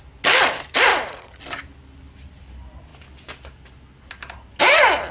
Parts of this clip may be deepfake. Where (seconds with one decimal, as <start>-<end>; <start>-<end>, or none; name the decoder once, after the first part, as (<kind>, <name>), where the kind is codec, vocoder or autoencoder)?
0.9-1.4 (vocoder, Vocos)